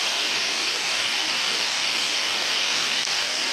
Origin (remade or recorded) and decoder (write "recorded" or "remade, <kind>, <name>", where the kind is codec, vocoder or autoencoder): remade, codec, DAC